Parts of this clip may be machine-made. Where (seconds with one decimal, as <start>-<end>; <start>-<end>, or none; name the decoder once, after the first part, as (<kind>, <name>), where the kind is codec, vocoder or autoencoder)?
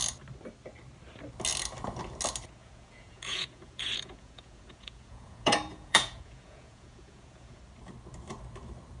2.6-7.6 (vocoder, Vocos)